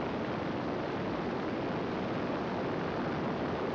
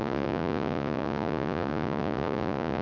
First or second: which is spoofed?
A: second